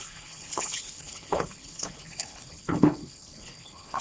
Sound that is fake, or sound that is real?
fake